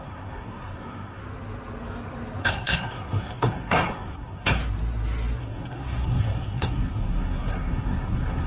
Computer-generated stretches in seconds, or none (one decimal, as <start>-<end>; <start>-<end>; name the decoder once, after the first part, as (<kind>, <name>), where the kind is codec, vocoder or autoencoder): 0.0-1.2 (codec, SNAC); 2.4-4.6; 5.4-8.5